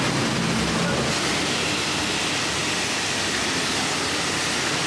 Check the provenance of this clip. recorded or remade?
recorded